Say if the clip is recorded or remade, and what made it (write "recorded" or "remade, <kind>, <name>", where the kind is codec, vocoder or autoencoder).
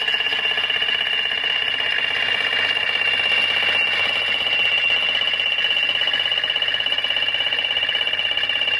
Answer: recorded